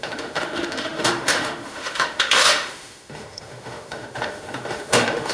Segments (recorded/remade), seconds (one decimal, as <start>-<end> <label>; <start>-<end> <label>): 0.0-5.3 remade